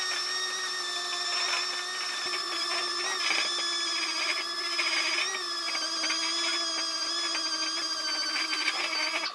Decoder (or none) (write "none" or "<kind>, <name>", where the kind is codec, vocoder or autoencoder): none